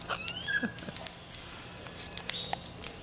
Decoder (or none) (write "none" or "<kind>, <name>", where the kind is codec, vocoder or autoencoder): none